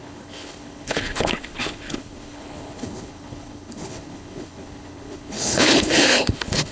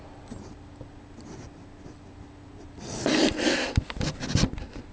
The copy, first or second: first